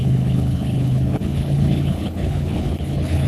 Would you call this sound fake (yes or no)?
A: yes